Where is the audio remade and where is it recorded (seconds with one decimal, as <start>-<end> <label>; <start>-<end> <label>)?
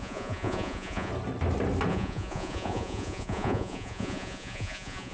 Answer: 0.0-1.1 remade; 1.1-1.9 recorded; 1.9-5.1 remade